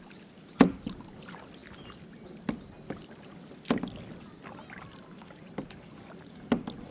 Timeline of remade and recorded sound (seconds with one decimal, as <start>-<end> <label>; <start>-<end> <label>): 0.0-6.9 recorded